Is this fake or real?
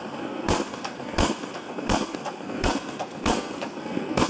fake